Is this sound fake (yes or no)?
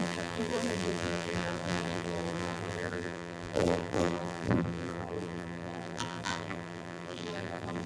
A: yes